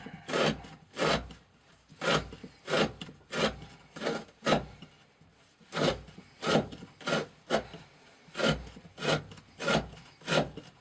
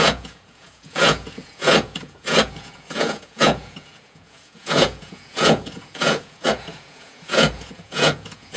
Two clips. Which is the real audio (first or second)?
first